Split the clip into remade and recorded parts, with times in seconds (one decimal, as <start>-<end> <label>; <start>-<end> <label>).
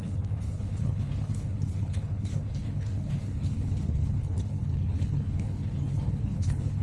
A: 0.0-6.8 remade